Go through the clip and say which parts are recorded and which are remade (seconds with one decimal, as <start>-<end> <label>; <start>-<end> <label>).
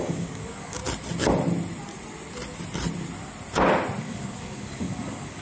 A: 0.0-0.8 remade; 0.8-4.0 recorded; 4.0-5.4 remade